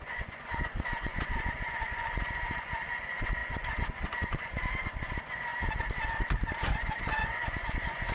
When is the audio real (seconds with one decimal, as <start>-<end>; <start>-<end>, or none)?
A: 5.5-6.6